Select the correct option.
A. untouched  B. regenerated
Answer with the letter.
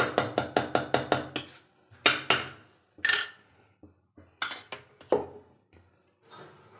A